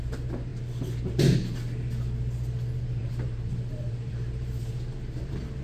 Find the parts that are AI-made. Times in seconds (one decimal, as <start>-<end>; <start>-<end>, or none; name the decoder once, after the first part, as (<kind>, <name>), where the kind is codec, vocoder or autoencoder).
3.0-4.7 (vocoder, BigVGAN v2)